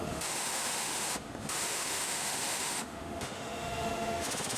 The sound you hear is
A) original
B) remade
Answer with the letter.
B